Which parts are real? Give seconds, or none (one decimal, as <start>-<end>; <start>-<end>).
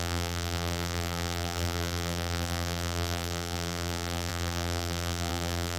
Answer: none